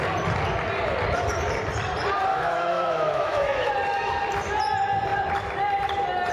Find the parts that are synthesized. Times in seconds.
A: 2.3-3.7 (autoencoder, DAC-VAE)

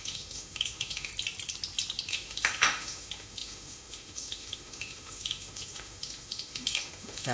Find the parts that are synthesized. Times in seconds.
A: 0.0-1.1 (autoencoder, DAC-VAE); 2.1-7.3

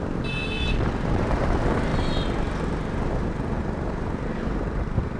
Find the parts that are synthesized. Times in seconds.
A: none

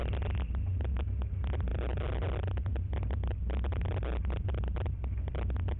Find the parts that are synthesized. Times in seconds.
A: none

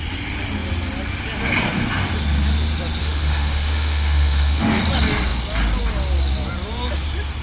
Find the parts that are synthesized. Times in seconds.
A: 3.0-4.8 (autoencoder, DAC-VAE)

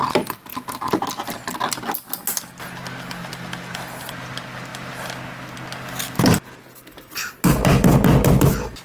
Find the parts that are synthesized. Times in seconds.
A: none

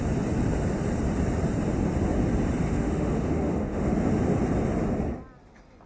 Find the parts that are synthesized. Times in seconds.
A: 2.6-3.9 (autoencoder, DAC-VAE)